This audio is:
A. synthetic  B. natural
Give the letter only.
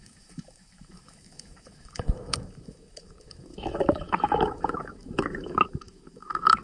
A